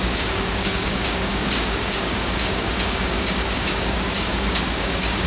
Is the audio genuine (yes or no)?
no